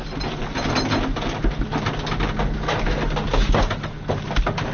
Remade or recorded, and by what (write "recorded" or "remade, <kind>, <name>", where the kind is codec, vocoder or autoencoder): recorded